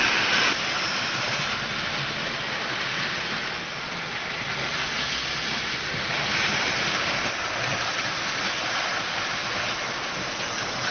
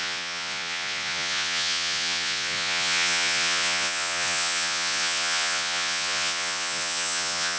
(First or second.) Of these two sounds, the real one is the first